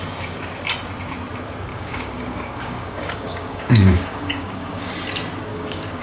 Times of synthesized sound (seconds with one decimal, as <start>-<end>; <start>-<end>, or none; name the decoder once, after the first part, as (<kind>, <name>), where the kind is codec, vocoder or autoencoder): 1.7-4.9 (codec, DAC); 5.5-6.0